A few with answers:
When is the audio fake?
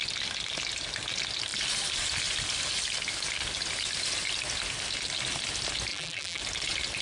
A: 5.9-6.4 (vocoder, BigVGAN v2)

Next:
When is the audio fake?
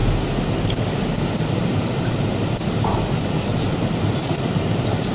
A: 1.5-5.1 (vocoder, BigVGAN v2)